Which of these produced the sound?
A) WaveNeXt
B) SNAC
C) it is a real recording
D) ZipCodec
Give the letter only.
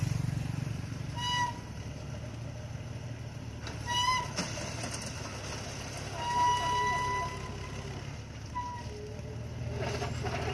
C